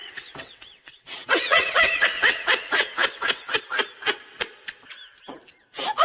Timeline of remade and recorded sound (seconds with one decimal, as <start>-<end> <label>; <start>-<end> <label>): 0.0-3.6 remade; 3.6-6.0 recorded